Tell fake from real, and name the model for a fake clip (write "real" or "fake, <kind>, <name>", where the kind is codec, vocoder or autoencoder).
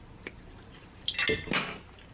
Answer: real